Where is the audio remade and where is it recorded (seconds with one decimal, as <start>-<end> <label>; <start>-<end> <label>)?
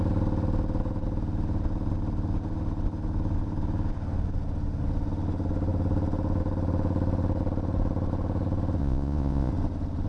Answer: 0.0-8.8 recorded; 8.8-9.5 remade; 9.5-10.1 recorded